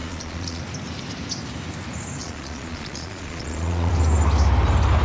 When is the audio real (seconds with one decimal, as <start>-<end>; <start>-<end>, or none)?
0.6-2.2; 3.9-5.0